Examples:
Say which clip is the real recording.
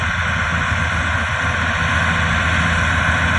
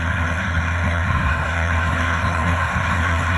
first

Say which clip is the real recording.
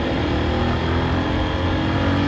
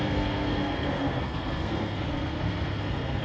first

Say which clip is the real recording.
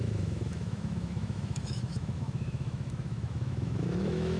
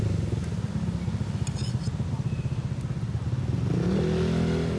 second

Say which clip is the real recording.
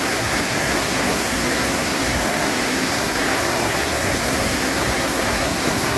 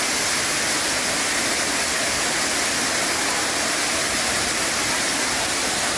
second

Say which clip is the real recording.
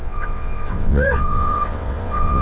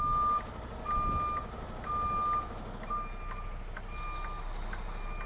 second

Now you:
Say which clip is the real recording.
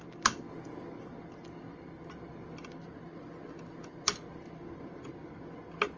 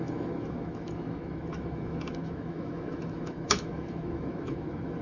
first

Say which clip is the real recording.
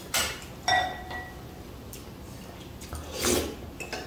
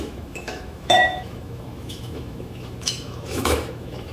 first